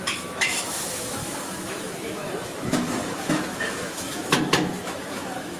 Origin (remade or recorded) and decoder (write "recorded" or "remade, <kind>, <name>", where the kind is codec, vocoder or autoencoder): remade, autoencoder, DAC-VAE